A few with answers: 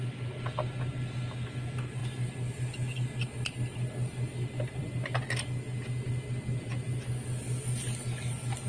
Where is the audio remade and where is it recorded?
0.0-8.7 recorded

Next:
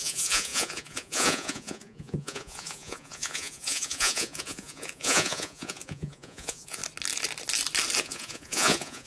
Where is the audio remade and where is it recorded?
0.0-6.8 remade; 6.8-8.0 recorded; 8.0-9.1 remade